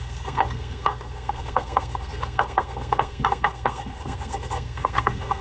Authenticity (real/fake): fake